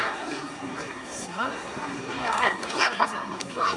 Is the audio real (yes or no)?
no